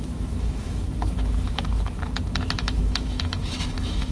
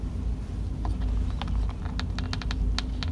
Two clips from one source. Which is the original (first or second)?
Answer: second